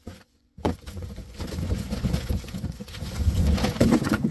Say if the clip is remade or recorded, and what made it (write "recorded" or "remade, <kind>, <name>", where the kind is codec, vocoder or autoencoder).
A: remade, vocoder, Vocos